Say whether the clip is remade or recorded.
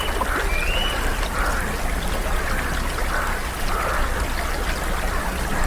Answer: recorded